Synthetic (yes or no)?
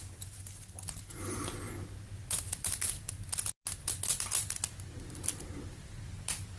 no